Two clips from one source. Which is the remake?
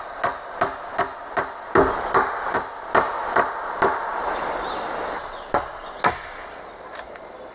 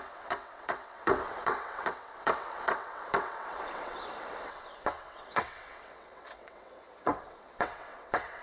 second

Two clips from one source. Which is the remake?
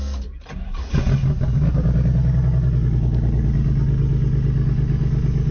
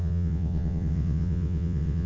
second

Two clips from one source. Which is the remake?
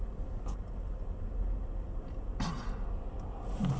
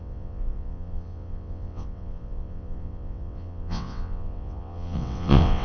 second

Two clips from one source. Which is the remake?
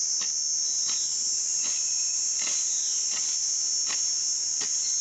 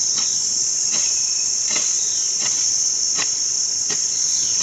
second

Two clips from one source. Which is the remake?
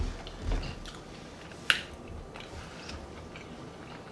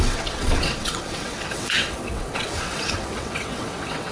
second